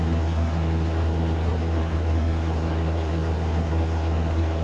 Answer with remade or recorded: remade